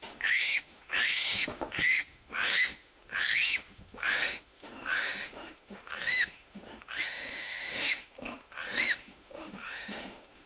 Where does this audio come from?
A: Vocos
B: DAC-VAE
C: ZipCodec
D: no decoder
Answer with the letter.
B